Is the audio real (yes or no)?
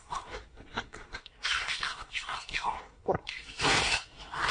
no